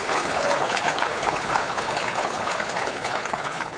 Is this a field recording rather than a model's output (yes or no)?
no